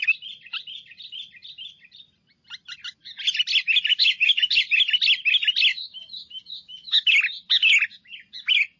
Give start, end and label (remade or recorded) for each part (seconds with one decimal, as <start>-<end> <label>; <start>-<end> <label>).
0.0-3.9 recorded; 3.9-4.6 remade; 4.6-5.7 recorded; 5.7-7.1 remade; 7.1-8.8 recorded